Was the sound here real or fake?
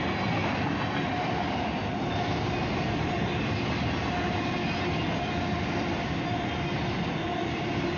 real